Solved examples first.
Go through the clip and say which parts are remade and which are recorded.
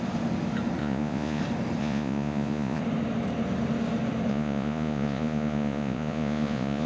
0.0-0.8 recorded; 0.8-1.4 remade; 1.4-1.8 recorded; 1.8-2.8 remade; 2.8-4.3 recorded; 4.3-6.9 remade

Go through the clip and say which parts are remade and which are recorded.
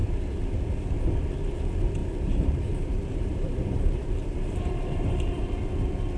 0.0-2.0 recorded; 2.0-5.7 remade; 5.7-6.2 recorded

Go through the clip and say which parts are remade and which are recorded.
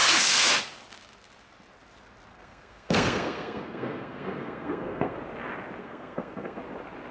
0.0-0.5 remade; 0.5-2.3 recorded; 2.3-5.2 remade; 5.2-5.8 recorded; 5.8-6.6 remade; 6.6-7.1 recorded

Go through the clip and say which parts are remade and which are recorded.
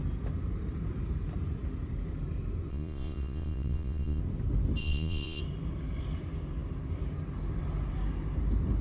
0.0-2.7 recorded; 2.7-4.2 remade; 4.2-4.8 recorded; 4.8-5.4 remade; 5.4-8.8 recorded